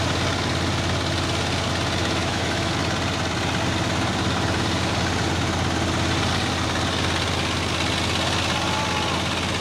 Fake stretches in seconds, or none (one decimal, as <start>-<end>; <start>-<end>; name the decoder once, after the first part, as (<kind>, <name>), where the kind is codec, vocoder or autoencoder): 2.0-2.7 (autoencoder, DAC-VAE)